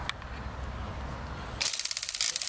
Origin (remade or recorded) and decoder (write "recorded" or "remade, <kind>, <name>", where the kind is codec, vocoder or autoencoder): recorded